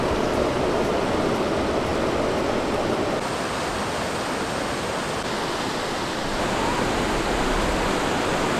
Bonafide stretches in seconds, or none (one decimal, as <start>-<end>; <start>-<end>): 0.0-8.6